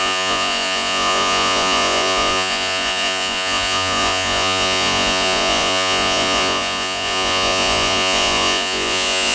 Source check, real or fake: fake